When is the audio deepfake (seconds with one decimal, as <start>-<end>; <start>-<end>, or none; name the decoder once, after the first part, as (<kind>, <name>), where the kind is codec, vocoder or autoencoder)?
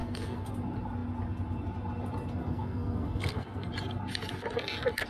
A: 0.0-0.5 (codec, SNAC); 2.4-3.7